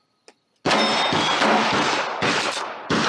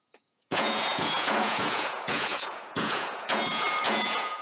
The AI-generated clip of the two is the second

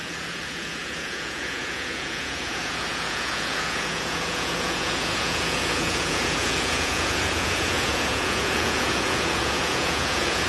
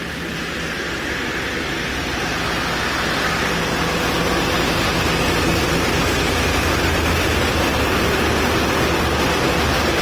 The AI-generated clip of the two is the first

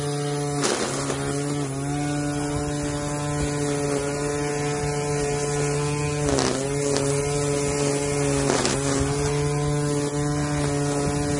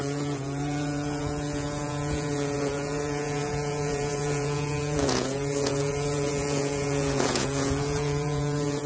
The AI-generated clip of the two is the second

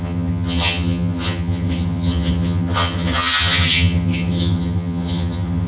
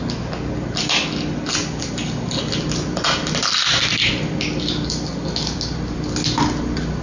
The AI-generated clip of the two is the first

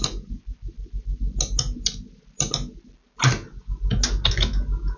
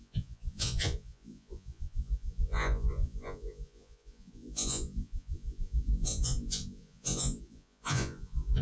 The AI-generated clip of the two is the second